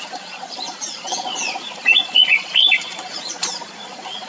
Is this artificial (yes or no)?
yes